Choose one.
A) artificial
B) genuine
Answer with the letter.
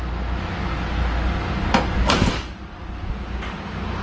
B